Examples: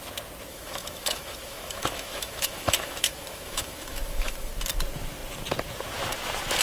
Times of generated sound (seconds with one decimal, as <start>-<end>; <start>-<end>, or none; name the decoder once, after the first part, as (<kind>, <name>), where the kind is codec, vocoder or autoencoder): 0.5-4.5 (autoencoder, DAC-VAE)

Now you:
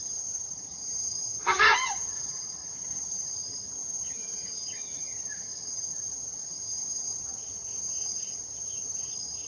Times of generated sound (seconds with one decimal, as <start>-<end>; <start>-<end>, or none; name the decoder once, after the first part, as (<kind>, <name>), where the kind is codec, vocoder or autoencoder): 0.0-9.5 (vocoder, HiFi-GAN)

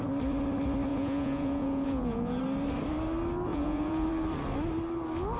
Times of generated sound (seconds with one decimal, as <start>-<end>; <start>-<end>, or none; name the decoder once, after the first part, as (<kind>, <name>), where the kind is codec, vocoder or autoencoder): 0.9-2.4 (vocoder, Vocos); 3.5-4.1